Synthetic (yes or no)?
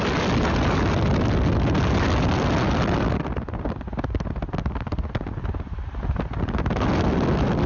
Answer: no